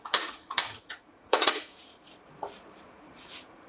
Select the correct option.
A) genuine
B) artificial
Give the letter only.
B